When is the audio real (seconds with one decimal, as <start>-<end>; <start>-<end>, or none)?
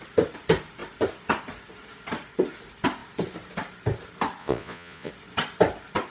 0.0-4.4; 5.1-6.1